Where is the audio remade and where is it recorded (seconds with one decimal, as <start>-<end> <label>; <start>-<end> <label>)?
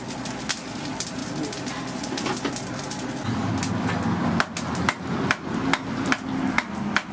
0.0-7.1 recorded